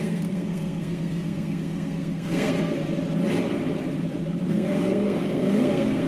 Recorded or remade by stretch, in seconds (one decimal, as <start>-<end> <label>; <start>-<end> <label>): 0.0-2.8 remade; 2.8-4.5 recorded; 4.5-6.1 remade